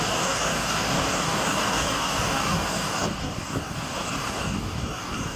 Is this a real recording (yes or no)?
no